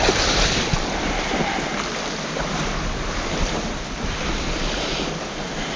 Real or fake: real